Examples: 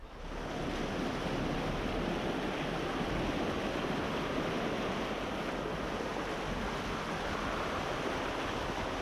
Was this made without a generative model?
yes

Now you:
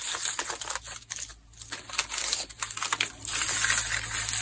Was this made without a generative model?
yes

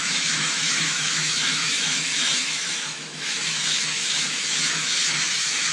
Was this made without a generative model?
no